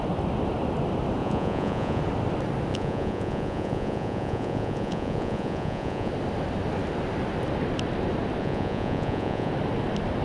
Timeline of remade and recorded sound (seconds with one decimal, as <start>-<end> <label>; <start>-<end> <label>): 0.0-1.2 recorded; 1.2-2.0 remade; 2.0-2.7 recorded; 2.7-6.1 remade; 6.1-8.4 recorded; 8.4-9.5 remade; 9.5-10.2 recorded